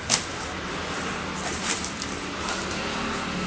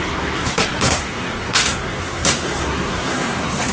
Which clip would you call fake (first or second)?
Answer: second